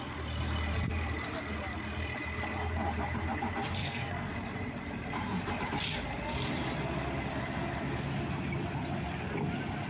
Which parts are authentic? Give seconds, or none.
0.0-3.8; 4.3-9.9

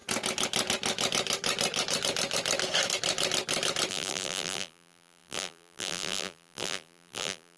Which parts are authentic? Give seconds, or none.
0.0-3.9

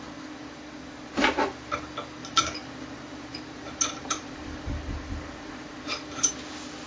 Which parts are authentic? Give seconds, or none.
0.0-2.2; 6.3-6.9

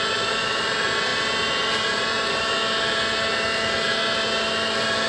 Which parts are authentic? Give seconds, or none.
0.0-5.1

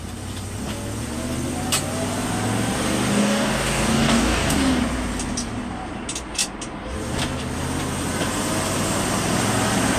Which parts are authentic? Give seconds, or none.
0.0-3.1; 4.8-10.0

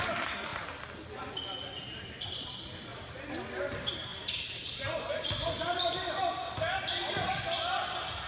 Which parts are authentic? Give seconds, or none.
0.5-2.0; 2.9-3.6; 4.1-5.1

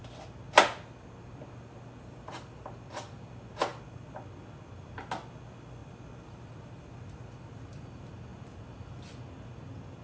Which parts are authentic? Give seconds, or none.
0.0-10.0